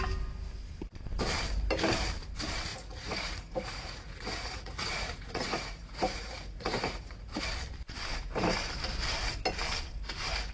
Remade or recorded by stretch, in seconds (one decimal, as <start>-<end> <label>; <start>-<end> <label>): 0.0-2.7 recorded; 2.7-7.4 remade; 7.4-8.1 recorded; 8.1-8.7 remade; 8.7-10.5 recorded